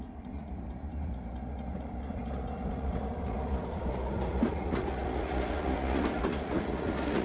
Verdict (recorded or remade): remade